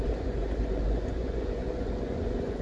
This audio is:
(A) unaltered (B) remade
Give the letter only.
B